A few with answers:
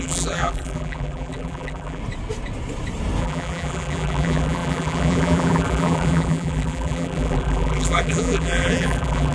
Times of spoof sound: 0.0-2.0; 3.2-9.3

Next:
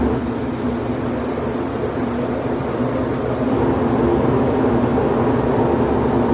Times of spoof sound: none

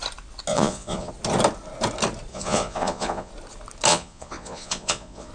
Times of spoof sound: 0.5-1.1; 2.3-3.3; 3.9-5.3